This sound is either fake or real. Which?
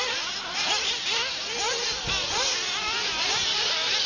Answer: real